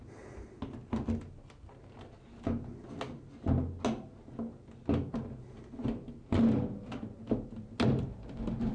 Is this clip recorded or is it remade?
recorded